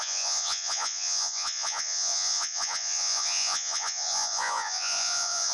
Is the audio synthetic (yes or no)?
yes